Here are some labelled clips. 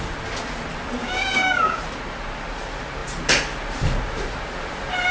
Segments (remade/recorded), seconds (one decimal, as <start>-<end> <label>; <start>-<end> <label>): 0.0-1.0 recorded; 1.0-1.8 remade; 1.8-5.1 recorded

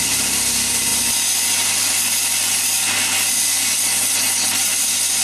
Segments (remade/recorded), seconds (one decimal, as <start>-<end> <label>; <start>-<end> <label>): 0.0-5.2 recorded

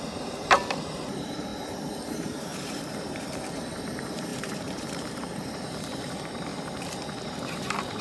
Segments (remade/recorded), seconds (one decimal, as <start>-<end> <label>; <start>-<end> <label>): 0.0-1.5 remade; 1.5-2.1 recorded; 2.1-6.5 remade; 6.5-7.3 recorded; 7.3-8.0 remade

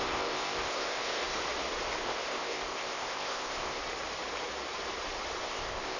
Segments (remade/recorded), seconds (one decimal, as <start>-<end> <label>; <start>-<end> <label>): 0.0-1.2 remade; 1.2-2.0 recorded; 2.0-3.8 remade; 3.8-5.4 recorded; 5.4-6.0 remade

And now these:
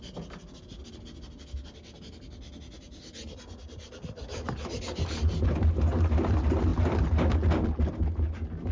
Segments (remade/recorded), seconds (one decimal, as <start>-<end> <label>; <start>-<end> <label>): 0.0-8.7 recorded

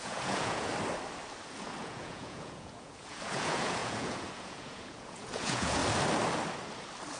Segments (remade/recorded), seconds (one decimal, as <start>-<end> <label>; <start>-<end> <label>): 0.0-0.7 remade; 0.7-1.8 recorded; 1.8-5.8 remade; 5.8-7.2 recorded

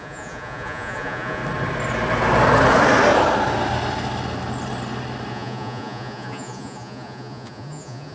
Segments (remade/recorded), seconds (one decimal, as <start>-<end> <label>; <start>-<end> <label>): 0.0-1.4 remade; 1.4-5.3 recorded; 5.3-8.1 remade